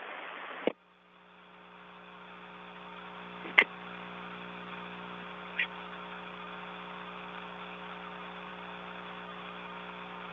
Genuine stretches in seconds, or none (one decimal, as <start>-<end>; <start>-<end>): 0.0-10.3